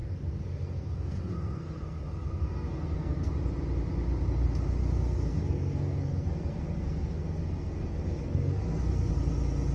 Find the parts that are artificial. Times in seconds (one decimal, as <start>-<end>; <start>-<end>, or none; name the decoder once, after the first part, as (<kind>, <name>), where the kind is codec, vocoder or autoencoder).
0.0-3.3 (codec, SNAC); 4.8-9.1